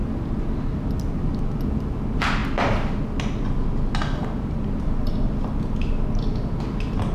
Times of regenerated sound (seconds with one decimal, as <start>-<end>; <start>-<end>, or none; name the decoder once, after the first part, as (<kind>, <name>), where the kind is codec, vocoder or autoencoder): none